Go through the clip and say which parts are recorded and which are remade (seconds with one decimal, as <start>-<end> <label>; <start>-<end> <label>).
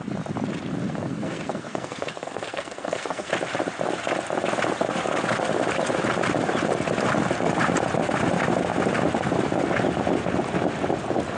0.0-0.8 recorded; 0.8-3.3 remade; 3.3-11.4 recorded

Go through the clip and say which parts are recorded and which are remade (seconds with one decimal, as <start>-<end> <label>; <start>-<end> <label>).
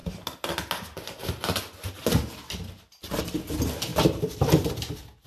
0.0-5.3 recorded